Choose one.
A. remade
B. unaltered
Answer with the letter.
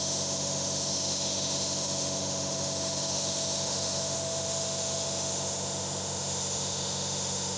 A